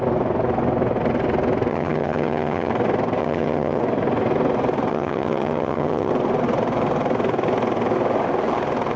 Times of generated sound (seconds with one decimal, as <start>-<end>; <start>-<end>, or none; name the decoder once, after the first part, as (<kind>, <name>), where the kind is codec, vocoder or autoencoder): 1.7-2.7 (vocoder, HiFi-GAN); 3.2-3.8; 4.9-6.1